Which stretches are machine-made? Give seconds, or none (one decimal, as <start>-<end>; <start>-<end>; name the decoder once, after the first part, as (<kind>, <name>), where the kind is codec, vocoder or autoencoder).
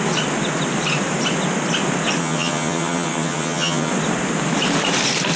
2.2-3.9 (vocoder, HiFi-GAN)